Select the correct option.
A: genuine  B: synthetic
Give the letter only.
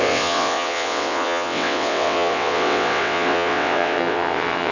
B